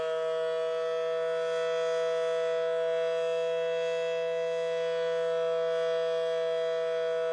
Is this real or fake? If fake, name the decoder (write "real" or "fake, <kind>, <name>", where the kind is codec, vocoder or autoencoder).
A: real